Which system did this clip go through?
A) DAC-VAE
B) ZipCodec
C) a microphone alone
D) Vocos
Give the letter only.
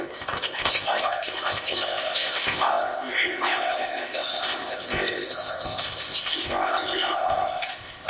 B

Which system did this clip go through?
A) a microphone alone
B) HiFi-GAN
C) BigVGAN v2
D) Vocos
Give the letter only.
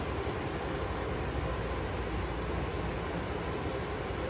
A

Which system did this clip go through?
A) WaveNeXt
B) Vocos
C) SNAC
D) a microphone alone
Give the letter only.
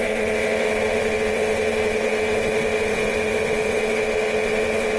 A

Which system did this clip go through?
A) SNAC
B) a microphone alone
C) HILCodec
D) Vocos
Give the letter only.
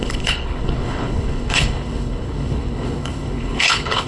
C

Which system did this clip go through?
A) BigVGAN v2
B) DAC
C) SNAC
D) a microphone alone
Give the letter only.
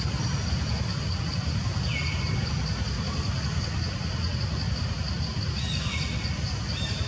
D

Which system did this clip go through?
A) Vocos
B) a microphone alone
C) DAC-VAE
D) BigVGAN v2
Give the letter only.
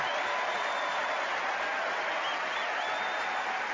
B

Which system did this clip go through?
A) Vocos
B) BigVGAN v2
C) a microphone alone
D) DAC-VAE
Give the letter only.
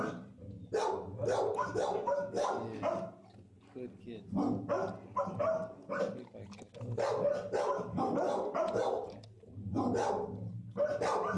C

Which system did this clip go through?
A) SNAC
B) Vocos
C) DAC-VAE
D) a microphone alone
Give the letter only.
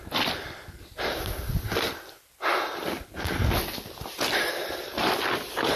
D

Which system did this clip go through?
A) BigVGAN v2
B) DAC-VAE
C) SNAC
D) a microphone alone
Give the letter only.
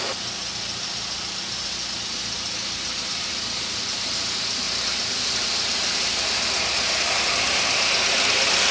D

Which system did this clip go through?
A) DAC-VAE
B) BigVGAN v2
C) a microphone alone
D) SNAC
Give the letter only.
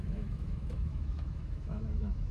A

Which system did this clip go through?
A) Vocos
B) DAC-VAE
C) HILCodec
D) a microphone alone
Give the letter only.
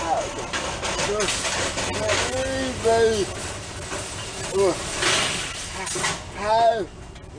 D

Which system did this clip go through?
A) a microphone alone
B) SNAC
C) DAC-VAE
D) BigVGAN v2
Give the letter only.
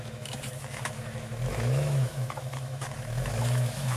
C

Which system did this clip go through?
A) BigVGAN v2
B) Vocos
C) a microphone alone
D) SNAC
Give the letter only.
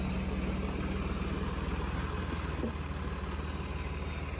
C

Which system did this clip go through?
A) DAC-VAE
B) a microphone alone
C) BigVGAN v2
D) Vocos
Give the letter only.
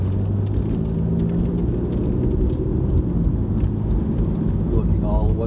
B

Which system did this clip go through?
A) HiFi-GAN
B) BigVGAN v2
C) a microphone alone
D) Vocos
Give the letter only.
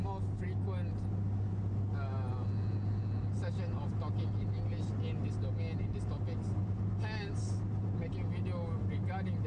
C